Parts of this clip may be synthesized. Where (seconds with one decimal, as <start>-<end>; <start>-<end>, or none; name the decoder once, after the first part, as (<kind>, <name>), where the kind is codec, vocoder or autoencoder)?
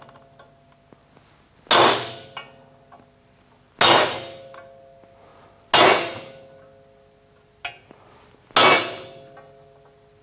none